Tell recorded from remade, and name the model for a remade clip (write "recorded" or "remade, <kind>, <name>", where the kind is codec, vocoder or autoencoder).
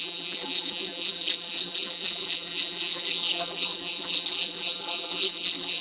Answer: remade, vocoder, BigVGAN v2